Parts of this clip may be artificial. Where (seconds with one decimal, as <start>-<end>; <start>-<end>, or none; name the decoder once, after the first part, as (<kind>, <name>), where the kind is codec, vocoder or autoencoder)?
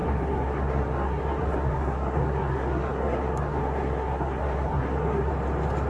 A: 0.0-5.3 (codec, SNAC)